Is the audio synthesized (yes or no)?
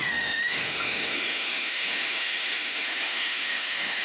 yes